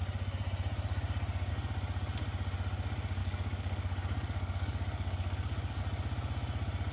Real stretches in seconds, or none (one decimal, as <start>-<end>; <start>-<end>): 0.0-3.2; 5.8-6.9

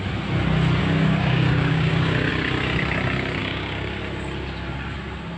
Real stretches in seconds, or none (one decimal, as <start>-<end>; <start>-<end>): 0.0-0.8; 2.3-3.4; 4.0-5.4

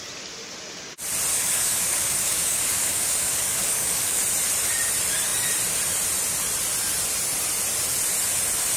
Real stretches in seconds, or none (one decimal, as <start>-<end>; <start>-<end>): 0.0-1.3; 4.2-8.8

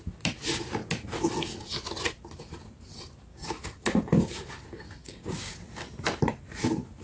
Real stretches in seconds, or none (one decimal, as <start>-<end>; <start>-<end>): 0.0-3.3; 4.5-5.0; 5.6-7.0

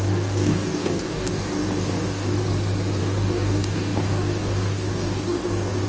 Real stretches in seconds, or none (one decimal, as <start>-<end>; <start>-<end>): 2.4-3.0

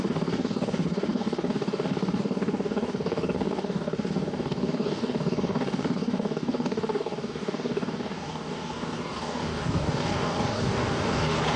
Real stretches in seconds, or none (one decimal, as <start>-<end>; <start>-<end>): none